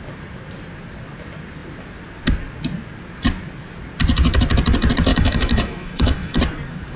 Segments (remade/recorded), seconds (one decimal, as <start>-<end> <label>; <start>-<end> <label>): 0.0-5.1 recorded; 5.1-6.4 remade; 6.4-7.0 recorded